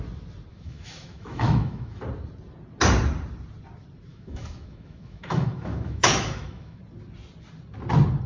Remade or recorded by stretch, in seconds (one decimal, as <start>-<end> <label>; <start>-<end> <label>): 0.0-0.5 recorded; 0.5-2.0 remade; 2.0-4.1 recorded; 4.1-6.8 remade; 6.8-8.3 recorded